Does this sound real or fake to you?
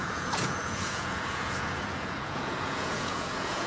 fake